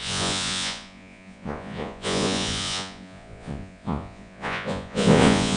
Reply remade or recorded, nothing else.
remade